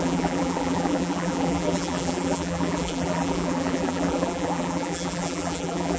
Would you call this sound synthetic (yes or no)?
yes